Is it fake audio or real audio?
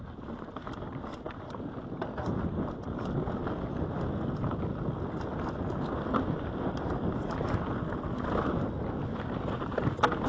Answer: real